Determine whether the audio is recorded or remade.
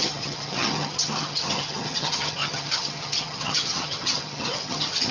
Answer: remade